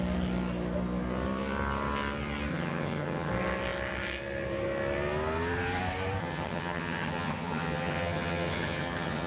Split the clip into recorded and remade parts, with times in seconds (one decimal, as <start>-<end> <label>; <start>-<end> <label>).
0.0-2.5 recorded; 2.5-3.3 remade; 3.3-6.2 recorded; 6.2-9.3 remade